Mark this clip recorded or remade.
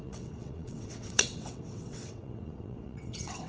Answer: remade